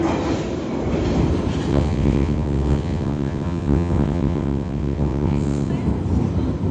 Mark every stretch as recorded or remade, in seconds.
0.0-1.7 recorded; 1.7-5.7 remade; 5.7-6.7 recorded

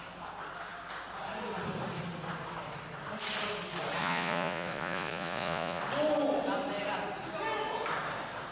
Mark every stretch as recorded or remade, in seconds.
0.0-4.0 recorded; 4.0-5.8 remade; 5.8-8.5 recorded

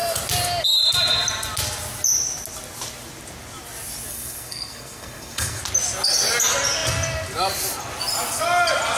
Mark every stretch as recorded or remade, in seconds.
0.0-4.1 recorded; 4.1-5.6 remade; 5.6-9.0 recorded